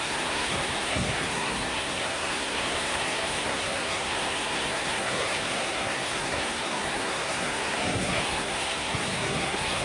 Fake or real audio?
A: fake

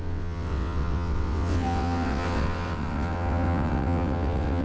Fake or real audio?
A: fake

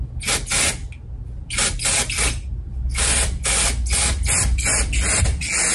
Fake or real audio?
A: real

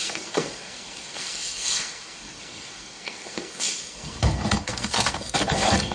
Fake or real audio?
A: fake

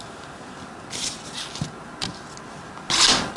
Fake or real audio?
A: real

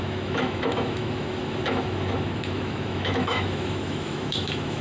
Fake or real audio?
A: fake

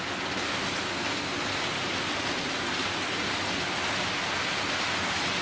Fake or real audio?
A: real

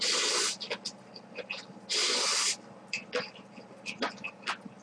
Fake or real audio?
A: real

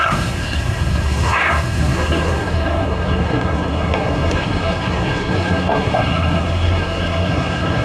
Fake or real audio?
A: fake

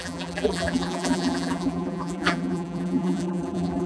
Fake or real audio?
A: fake